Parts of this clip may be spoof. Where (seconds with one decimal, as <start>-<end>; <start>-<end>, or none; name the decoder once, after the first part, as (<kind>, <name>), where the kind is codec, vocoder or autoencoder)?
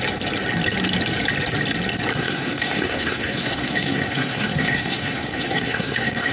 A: 2.1-6.3 (codec, SNAC)